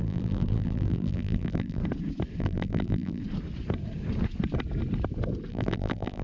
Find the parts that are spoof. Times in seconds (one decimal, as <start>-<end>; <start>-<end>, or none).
0.0-1.8; 2.4-3.2; 5.5-6.2